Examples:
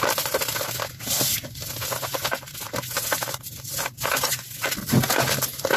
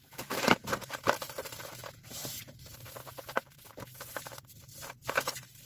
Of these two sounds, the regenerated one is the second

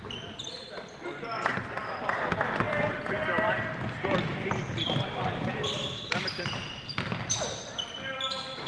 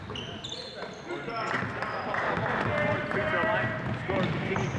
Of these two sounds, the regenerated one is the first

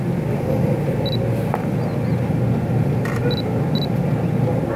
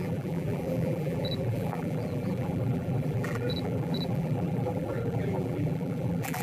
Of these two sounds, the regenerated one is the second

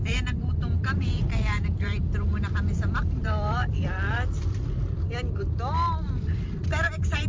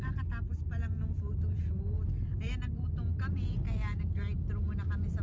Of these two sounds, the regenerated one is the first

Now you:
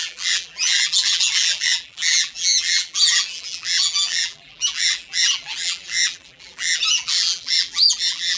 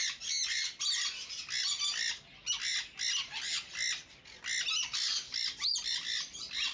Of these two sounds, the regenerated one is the first